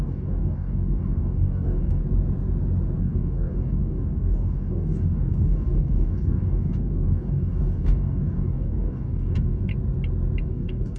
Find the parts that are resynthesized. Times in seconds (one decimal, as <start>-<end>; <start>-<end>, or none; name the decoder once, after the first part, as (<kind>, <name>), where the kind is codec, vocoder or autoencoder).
0.0-2.0 (codec, DAC); 3.0-9.7; 10.4-11.0